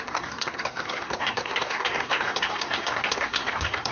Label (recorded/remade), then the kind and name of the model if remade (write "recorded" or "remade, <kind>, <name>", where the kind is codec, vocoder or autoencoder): remade, codec, SNAC